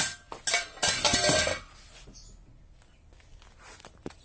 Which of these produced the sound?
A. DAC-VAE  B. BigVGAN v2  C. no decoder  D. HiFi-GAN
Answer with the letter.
C